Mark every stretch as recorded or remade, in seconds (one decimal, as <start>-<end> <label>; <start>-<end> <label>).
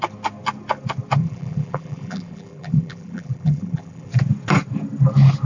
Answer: 0.0-1.2 recorded; 1.2-4.1 remade; 4.1-5.4 recorded